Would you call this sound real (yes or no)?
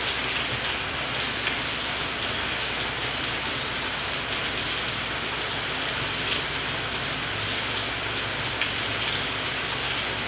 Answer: yes